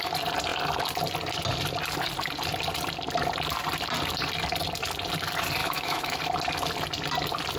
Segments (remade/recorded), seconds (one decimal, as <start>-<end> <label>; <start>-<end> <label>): 0.0-5.6 recorded; 5.6-6.2 remade; 6.2-7.6 recorded